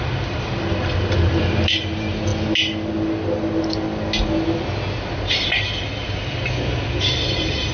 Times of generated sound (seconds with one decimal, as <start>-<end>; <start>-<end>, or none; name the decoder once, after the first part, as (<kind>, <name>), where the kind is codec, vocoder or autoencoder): 0.0-2.3 (vocoder, BigVGAN v2); 6.9-7.7